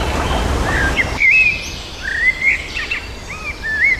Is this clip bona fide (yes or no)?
yes